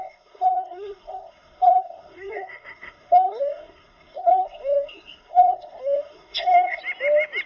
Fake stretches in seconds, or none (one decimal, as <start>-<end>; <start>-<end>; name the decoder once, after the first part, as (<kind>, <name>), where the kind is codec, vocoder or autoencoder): 0.0-6.8 (codec, SNAC)